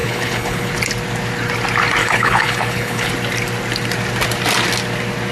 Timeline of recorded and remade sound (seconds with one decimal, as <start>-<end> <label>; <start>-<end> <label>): 0.0-0.7 remade; 0.7-2.0 recorded; 2.0-3.1 remade; 3.1-5.3 recorded